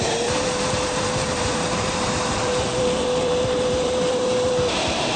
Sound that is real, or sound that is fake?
fake